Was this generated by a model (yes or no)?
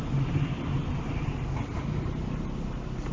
no